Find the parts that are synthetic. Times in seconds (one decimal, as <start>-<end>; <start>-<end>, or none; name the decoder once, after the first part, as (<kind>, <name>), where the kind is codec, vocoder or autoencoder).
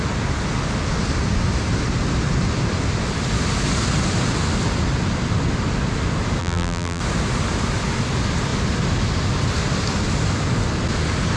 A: 6.4-7.0 (vocoder, BigVGAN v2)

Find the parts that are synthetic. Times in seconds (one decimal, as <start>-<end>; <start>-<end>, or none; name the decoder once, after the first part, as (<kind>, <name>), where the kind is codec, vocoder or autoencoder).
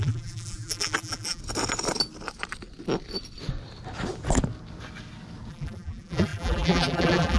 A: 0.0-1.4 (vocoder, BigVGAN v2); 5.5-7.4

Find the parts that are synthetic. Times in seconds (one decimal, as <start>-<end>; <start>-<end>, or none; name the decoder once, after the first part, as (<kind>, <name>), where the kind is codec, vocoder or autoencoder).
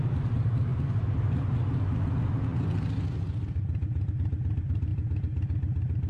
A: 0.7-1.4 (vocoder, BigVGAN v2); 2.5-4.1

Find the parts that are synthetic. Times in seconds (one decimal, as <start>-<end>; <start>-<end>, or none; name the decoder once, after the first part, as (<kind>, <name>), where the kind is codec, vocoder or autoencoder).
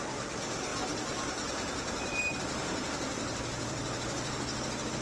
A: none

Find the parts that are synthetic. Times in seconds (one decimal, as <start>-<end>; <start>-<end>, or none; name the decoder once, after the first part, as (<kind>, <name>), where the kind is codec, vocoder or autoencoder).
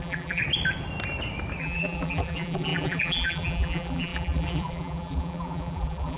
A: 0.0-0.4 (vocoder, BigVGAN v2); 1.6-6.2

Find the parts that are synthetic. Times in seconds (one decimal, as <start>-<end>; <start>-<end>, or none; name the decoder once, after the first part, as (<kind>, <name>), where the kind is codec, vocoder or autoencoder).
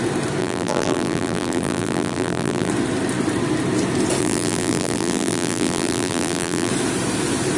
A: 0.4-2.7 (vocoder, BigVGAN v2); 4.2-6.7